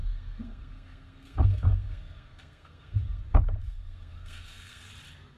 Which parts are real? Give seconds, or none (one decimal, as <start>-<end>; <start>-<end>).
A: 3.2-3.6; 4.9-5.4